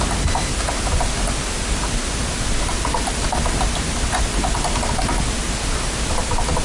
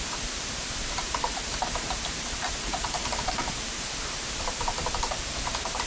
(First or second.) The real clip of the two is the first